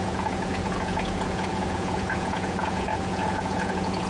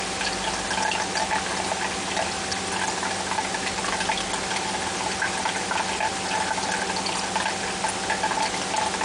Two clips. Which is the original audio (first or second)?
second